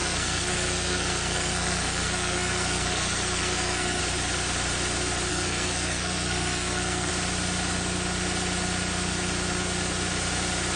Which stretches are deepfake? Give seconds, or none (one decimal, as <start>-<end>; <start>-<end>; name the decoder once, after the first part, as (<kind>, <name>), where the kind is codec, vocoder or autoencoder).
0.0-4.0 (codec, SNAC); 5.3-7.1